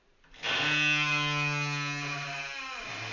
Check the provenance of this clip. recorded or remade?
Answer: recorded